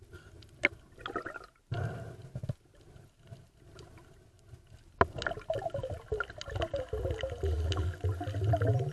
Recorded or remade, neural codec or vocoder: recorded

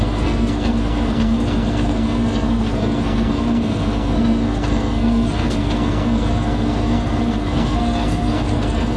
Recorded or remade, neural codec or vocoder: remade, codec, SNAC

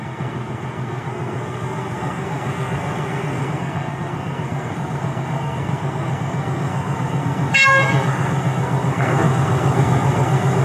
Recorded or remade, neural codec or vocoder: remade, codec, SNAC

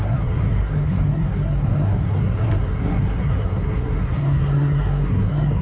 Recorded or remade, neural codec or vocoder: remade, codec, SNAC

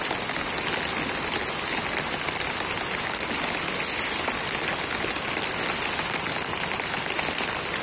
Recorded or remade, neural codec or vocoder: recorded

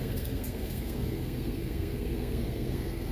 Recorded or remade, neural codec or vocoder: remade, codec, SNAC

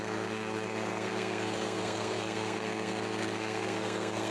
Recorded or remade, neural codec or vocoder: remade, codec, SNAC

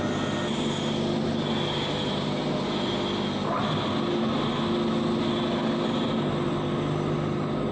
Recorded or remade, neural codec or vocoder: recorded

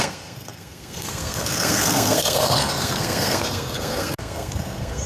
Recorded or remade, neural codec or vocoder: remade, codec, SNAC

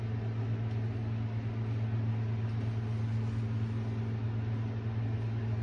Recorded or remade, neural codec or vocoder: recorded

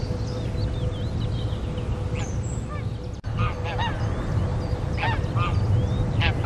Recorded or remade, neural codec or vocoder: recorded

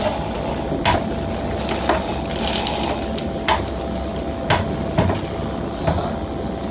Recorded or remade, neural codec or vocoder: recorded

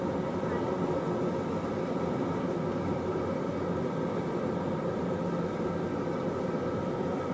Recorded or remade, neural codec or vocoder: recorded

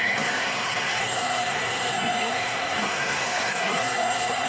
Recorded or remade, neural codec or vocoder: remade, codec, SNAC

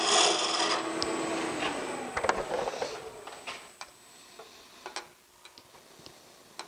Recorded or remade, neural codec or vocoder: recorded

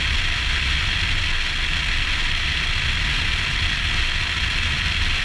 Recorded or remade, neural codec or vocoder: recorded